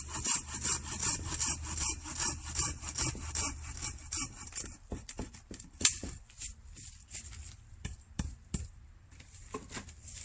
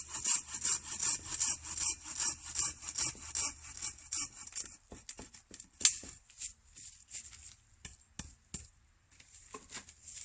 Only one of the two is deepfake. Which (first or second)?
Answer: first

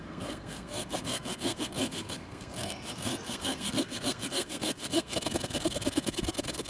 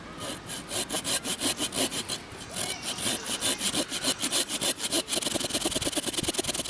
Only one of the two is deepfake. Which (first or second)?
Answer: first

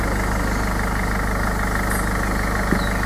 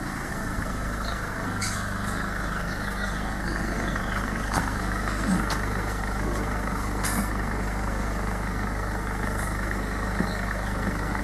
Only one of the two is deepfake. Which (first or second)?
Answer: second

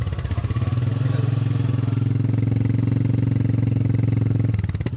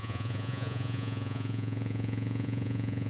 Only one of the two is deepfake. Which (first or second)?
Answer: second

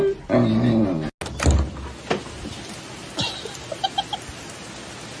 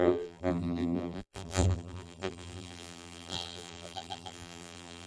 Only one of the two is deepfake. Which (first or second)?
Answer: second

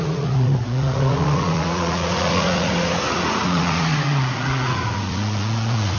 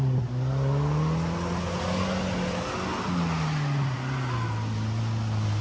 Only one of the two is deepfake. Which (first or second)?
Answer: first